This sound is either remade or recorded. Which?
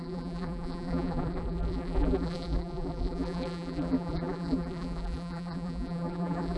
remade